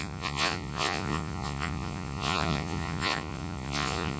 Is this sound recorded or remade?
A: remade